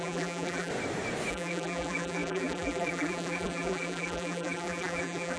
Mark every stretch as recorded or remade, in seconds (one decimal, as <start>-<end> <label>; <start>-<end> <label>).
0.0-0.7 remade; 0.7-1.3 recorded; 1.3-5.4 remade